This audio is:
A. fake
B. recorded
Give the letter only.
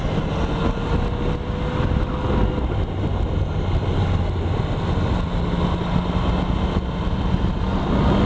B